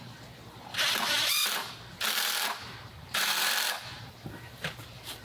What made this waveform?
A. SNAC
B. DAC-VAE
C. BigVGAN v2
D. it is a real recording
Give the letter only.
C